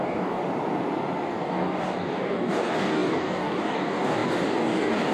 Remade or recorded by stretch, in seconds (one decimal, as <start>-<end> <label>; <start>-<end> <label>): 0.0-0.4 remade; 0.4-1.3 recorded; 1.3-5.1 remade